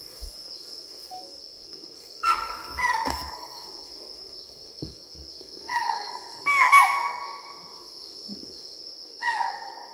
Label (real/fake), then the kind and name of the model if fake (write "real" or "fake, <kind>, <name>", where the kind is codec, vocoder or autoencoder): fake, codec, SNAC